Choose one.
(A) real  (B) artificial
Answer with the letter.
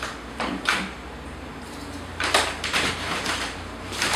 B